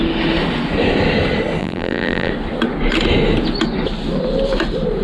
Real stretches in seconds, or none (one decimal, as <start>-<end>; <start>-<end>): 0.0-1.6; 2.3-5.0